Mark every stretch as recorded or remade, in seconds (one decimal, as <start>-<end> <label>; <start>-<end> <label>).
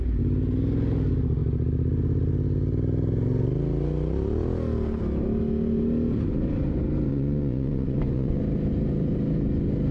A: 0.0-7.1 recorded; 7.1-8.4 remade; 8.4-9.9 recorded